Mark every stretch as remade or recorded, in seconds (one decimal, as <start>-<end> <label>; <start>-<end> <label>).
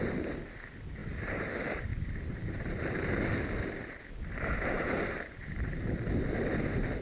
0.0-1.0 recorded; 1.0-1.5 remade; 1.5-1.9 recorded; 1.9-2.8 remade; 2.8-4.3 recorded; 4.3-5.8 remade; 5.8-7.0 recorded